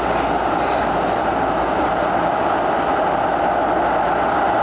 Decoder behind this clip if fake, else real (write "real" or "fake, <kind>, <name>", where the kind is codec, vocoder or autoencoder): real